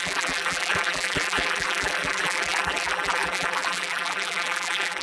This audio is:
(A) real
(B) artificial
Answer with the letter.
B